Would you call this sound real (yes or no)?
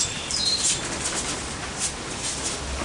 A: yes